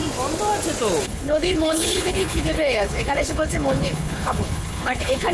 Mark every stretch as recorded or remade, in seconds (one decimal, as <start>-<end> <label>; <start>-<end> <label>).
0.0-1.0 recorded; 1.0-5.3 remade